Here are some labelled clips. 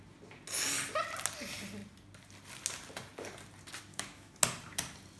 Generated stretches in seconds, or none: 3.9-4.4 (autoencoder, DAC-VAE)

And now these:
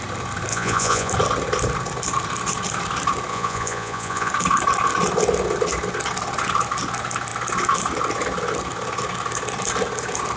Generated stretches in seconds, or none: 0.5-1.1 (vocoder, Vocos); 3.3-4.3

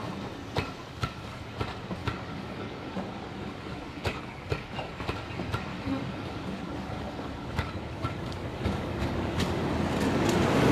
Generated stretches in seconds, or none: 0.8-1.4 (codec, DAC); 2.0-4.9; 5.7-9.6

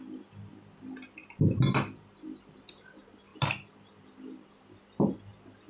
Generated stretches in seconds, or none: none

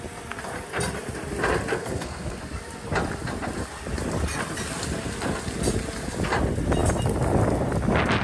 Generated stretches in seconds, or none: 1.7-2.4 (codec, SNAC)

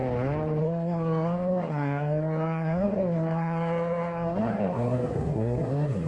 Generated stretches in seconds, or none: 0.6-6.1 (codec, SNAC)

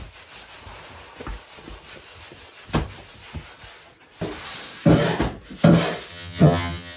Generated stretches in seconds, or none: 6.1-7.0 (vocoder, HiFi-GAN)